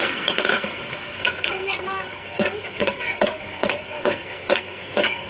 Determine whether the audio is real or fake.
fake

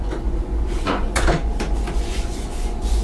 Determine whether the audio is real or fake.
fake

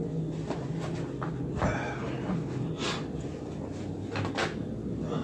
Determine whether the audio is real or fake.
real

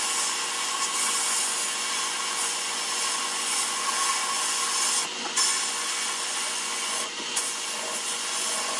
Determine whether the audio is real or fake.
fake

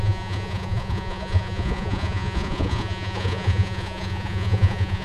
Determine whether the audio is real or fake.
fake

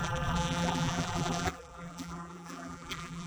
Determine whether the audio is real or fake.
fake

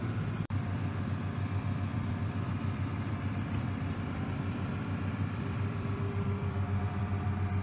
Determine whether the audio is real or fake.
fake